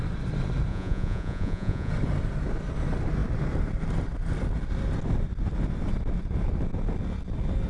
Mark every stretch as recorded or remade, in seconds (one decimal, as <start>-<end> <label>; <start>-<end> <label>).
0.0-0.7 recorded; 0.7-1.9 remade; 1.9-7.7 recorded